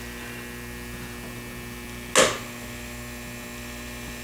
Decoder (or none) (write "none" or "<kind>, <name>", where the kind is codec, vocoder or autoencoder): none